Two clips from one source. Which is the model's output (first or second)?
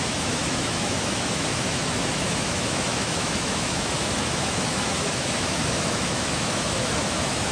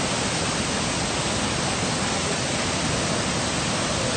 first